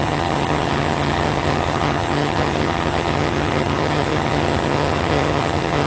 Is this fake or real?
fake